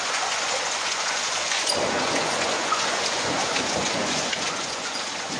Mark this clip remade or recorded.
remade